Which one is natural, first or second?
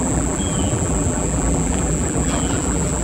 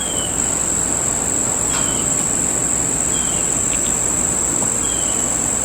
second